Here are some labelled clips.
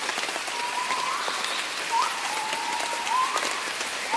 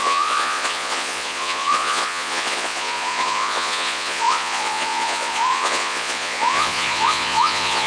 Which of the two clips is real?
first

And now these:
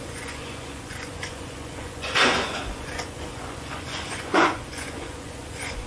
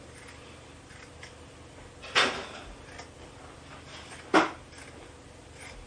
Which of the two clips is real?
second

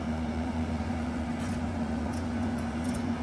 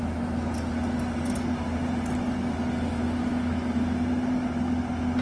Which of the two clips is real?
second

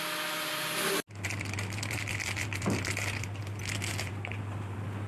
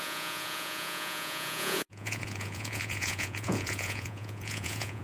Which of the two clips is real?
first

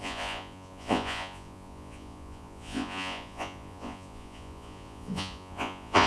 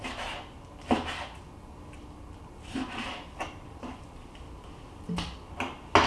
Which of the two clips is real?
second